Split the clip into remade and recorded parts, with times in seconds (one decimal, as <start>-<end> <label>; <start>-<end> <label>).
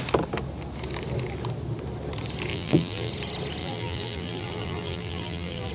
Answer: 0.0-2.5 recorded; 2.5-3.1 remade; 3.1-3.6 recorded; 3.6-5.7 remade